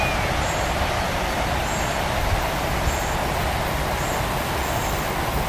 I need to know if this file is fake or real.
real